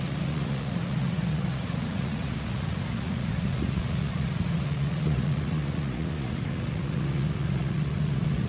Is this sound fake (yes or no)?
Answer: yes